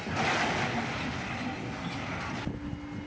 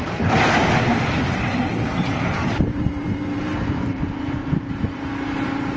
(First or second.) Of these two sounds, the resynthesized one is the second